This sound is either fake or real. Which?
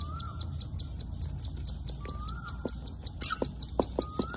real